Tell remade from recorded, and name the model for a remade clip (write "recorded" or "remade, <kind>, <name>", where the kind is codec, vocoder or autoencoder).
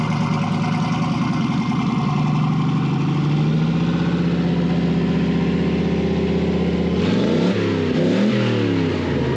recorded